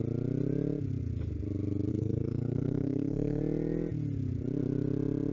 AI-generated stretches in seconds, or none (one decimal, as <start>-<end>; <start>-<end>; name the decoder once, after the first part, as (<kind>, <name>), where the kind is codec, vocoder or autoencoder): 1.9-3.4 (codec, SNAC)